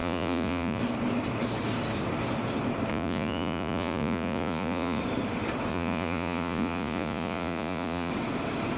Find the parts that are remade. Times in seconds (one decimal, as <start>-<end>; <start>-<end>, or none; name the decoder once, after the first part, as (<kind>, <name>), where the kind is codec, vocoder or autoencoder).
0.0-0.8 (vocoder, Vocos); 2.9-5.0; 5.7-8.1